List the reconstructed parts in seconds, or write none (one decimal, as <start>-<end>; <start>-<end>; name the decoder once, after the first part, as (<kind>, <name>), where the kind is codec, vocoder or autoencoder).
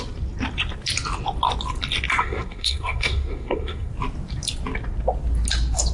2.2-3.9 (codec, SNAC)